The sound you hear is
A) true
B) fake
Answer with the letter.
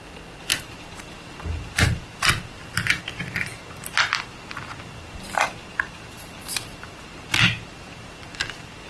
A